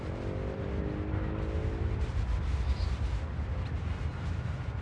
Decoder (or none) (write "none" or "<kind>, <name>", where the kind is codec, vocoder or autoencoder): none